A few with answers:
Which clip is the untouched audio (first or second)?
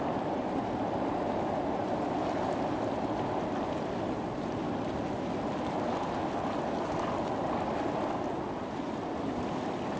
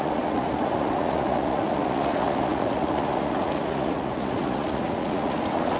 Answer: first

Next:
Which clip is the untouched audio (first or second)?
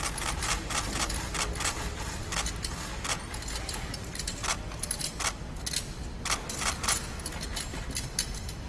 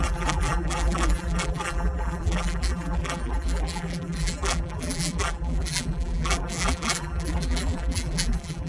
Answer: first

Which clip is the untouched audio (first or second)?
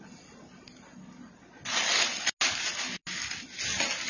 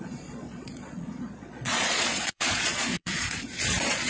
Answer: first